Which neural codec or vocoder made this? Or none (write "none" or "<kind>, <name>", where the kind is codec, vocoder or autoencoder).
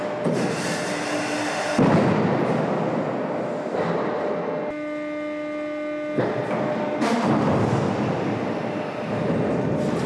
none